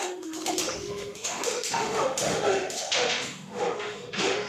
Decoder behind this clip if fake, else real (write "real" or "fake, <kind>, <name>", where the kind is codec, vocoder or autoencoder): fake, autoencoder, DAC-VAE